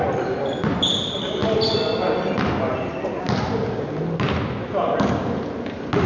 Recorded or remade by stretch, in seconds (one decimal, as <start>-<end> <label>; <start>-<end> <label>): 0.0-6.1 recorded